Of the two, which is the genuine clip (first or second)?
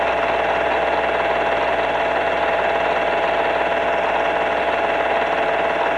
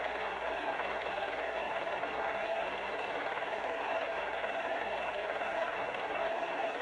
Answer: first